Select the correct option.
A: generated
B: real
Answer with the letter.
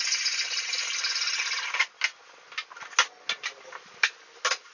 B